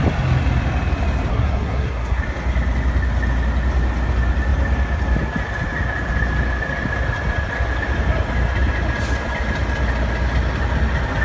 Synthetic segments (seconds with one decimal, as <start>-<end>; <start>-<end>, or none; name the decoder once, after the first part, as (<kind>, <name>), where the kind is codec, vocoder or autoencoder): 1.3-2.2 (codec, SNAC)